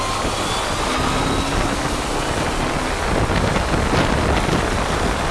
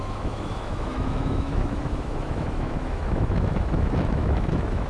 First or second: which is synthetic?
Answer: second